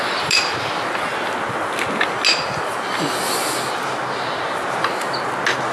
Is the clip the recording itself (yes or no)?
yes